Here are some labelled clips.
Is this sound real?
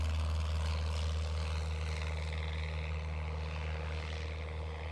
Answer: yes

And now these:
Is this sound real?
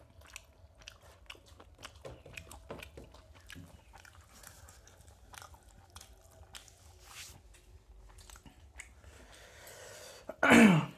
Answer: yes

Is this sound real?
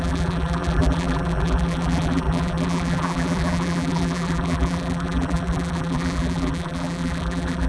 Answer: no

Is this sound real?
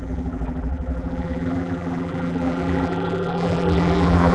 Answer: no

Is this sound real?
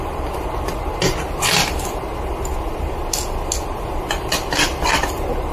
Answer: yes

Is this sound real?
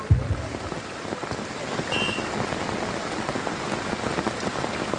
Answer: yes